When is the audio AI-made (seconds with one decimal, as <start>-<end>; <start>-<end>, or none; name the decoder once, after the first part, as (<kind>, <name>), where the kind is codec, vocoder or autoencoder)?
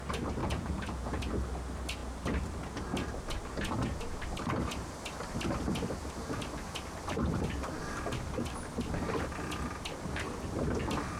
0.4-1.3 (vocoder, Vocos)